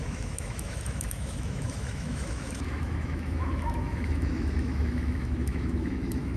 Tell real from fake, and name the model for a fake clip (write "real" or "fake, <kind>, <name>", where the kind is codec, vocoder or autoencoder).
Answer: fake, autoencoder, DAC-VAE